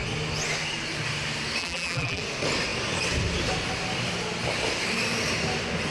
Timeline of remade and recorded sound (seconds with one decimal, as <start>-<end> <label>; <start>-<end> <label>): 0.0-1.6 recorded; 1.6-2.2 remade; 2.2-5.9 recorded